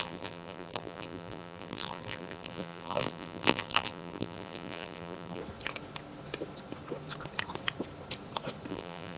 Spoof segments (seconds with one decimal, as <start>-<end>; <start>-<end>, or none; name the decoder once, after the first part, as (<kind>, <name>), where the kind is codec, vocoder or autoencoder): 0.0-5.4 (vocoder, BigVGAN v2); 8.7-9.2